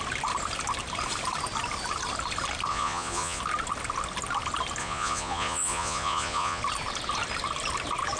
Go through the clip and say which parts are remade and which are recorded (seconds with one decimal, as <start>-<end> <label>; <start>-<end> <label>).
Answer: 0.0-2.7 recorded; 2.7-3.4 remade; 3.4-4.8 recorded; 4.8-6.6 remade; 6.6-8.2 recorded